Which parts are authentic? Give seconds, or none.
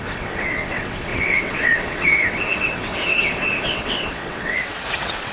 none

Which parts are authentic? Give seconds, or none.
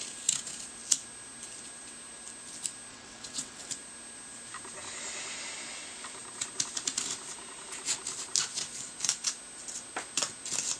0.0-2.9; 3.7-10.8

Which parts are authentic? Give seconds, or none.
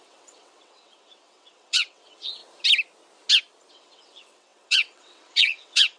2.4-3.7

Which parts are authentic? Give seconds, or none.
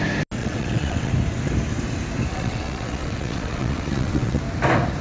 0.0-0.4; 1.1-2.3; 4.4-5.0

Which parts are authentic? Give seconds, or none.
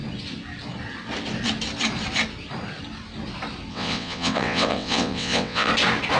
0.0-3.7; 5.7-6.2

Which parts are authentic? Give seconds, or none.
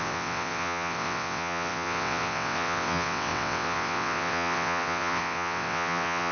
none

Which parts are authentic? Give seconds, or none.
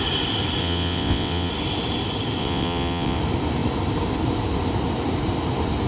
0.0-0.6; 1.5-2.4; 3.2-5.9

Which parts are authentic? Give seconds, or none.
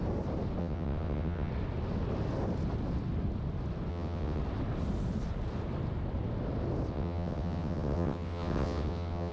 0.0-0.6; 1.5-3.9; 4.4-6.9